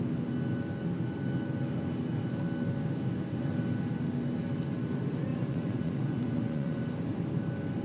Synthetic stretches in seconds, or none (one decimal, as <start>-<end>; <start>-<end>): 5.3-6.8